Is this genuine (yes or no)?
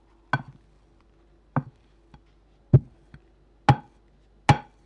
yes